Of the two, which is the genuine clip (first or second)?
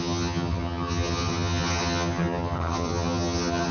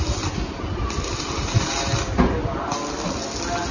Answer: second